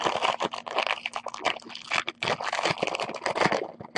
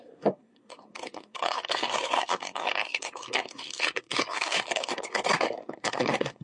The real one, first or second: first